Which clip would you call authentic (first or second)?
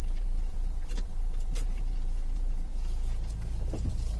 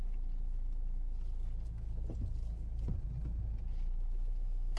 second